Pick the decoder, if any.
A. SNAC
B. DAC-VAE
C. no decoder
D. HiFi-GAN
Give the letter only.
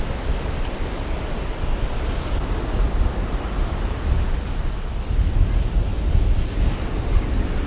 C